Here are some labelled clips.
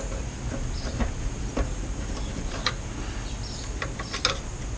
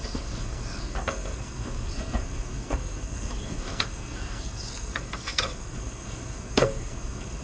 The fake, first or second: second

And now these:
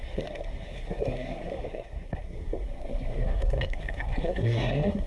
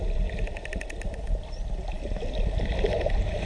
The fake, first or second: first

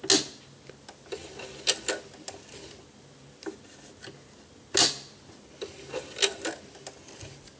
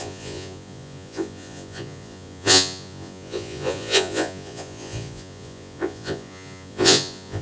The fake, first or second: second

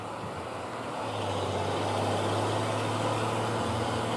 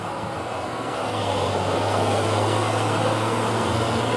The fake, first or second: second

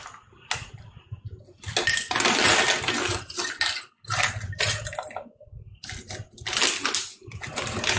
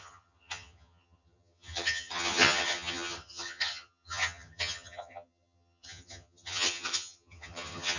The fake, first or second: second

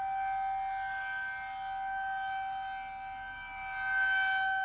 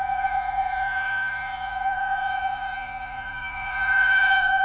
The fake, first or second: second